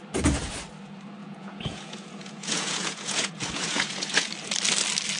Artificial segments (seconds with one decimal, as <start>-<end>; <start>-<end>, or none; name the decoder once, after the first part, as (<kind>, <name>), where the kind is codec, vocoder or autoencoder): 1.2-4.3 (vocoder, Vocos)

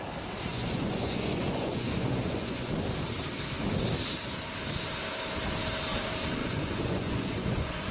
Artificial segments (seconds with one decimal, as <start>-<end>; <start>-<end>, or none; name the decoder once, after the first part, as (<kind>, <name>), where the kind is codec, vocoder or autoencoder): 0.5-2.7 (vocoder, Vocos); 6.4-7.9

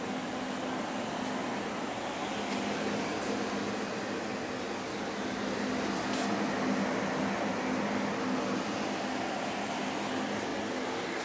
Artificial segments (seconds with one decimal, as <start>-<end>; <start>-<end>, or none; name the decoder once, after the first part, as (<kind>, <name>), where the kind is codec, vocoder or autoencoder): none

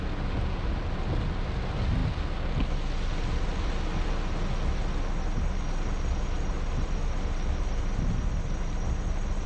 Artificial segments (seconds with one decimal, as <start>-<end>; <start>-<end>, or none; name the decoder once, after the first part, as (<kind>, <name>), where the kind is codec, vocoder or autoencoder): none

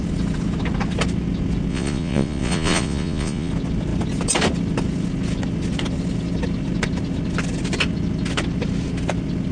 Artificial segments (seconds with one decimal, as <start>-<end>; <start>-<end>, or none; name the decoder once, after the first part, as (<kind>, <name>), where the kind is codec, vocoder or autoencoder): 1.7-3.5 (vocoder, Vocos)